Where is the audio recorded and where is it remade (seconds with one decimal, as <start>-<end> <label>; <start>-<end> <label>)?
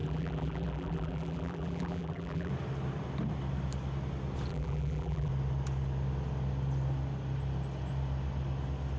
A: 0.0-2.5 remade; 2.5-4.5 recorded; 4.5-5.3 remade; 5.3-9.0 recorded